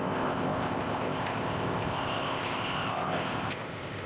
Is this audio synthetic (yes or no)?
yes